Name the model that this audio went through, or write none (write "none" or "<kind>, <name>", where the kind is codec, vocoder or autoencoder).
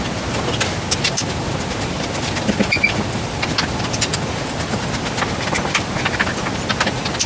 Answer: none